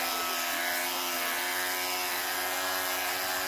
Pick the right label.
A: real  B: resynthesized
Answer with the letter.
A